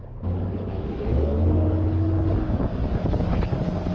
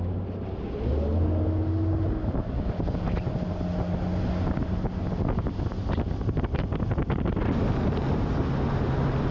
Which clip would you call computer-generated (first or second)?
first